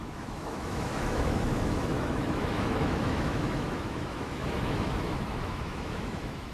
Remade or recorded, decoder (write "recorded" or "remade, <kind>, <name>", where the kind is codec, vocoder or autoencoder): remade, autoencoder, DAC-VAE